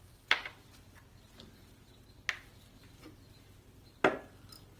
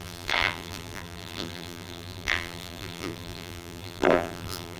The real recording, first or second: first